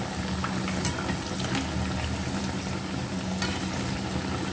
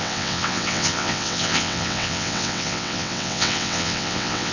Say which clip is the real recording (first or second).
first